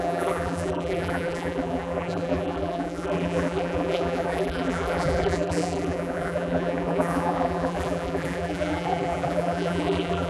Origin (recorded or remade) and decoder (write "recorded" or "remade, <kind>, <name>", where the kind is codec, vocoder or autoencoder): remade, vocoder, BigVGAN v2